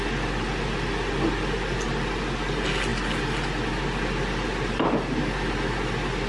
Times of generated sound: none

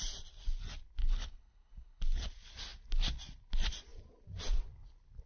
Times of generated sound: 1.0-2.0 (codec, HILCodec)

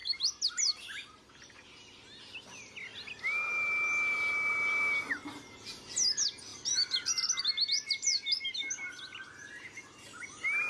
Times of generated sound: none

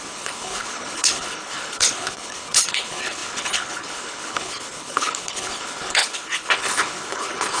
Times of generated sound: 0.0-7.6 (codec, HILCodec)

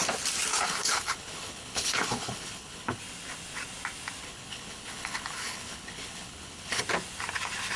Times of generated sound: 0.5-3.0 (codec, HILCodec); 4.2-6.8